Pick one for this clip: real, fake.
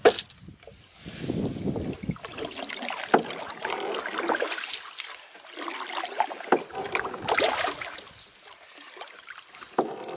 real